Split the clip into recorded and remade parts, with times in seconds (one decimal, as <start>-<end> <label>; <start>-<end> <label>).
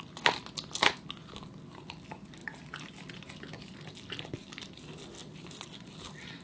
0.0-6.4 recorded